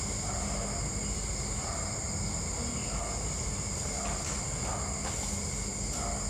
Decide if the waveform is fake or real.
real